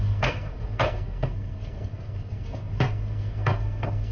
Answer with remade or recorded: remade